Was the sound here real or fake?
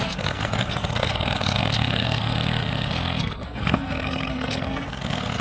fake